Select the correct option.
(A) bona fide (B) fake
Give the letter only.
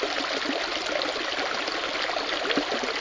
A